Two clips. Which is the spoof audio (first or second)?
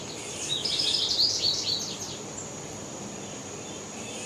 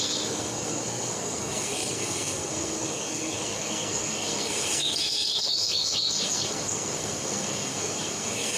second